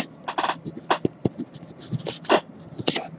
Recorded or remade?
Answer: recorded